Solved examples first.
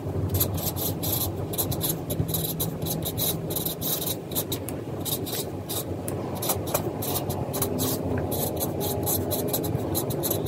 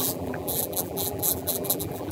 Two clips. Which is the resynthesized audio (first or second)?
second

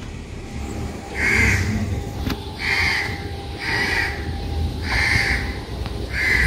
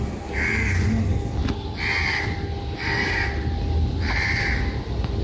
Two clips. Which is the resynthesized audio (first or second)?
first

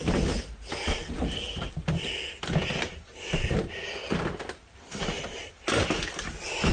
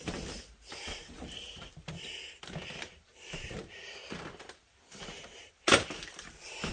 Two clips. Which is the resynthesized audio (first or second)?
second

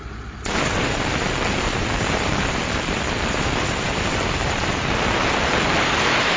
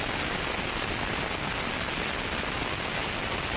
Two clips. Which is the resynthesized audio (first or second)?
first